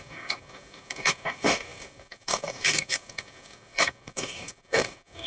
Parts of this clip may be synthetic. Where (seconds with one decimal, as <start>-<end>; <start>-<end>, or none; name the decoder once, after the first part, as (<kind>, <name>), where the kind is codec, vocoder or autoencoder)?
0.0-5.3 (codec, DAC)